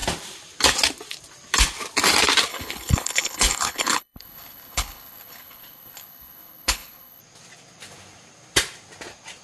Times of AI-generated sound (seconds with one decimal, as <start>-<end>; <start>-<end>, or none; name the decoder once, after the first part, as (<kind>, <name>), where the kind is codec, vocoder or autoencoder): 2.5-7.2 (codec, HILCodec)